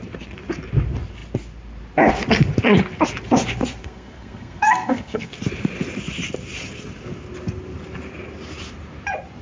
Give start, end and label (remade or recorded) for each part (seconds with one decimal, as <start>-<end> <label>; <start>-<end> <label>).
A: 0.0-3.8 recorded; 3.8-5.3 remade; 5.3-9.4 recorded